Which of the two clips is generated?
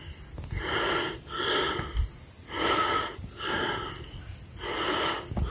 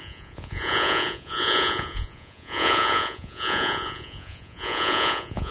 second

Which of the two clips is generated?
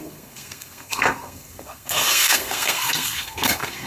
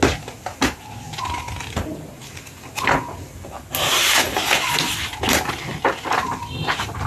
first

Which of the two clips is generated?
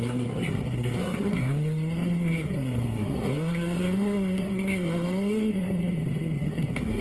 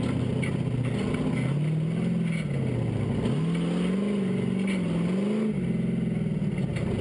first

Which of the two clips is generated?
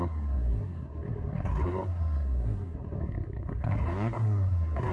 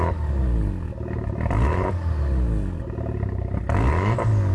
first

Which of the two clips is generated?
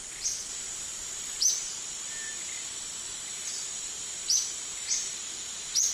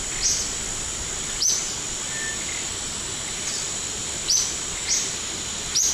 first